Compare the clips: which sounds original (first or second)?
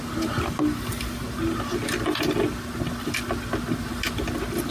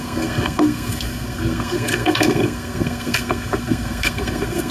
first